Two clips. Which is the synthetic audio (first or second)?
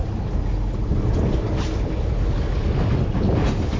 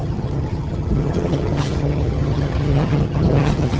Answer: second